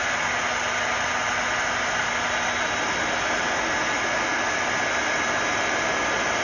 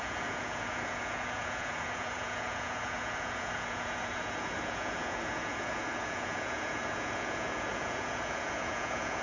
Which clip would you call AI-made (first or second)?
second